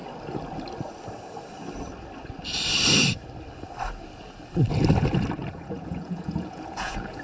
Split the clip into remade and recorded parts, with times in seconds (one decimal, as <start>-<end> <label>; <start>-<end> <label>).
0.0-5.4 recorded; 5.4-7.2 remade